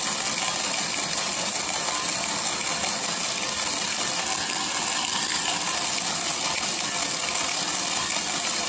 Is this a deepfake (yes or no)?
no